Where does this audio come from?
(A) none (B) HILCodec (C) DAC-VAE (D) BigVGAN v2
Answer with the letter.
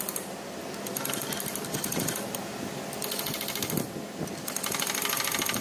A